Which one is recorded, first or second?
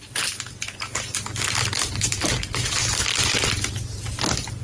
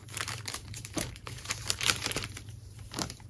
first